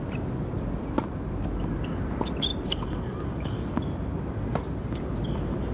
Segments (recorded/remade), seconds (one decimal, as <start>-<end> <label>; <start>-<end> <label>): 0.0-5.7 recorded